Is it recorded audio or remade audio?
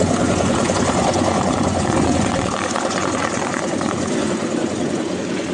remade